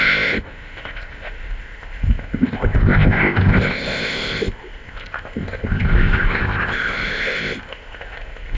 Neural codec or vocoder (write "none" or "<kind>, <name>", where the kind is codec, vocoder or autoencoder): codec, ZipCodec